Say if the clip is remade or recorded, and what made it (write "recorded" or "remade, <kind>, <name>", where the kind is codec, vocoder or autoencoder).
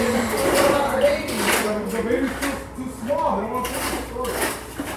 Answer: recorded